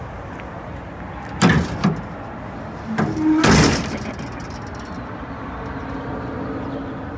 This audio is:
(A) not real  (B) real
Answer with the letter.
B